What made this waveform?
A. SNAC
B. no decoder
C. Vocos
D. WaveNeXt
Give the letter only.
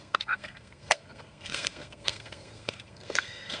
A